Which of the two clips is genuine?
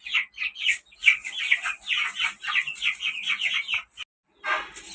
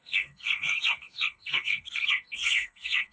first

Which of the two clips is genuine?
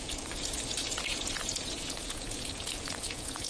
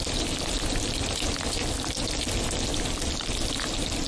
second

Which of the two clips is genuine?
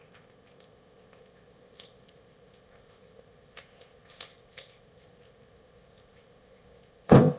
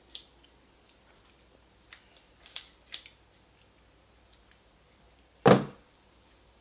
second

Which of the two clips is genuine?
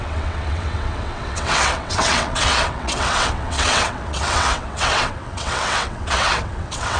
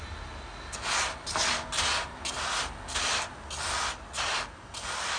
second